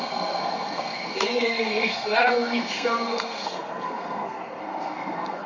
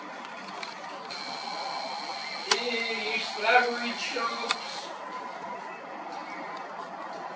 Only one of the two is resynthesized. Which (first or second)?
first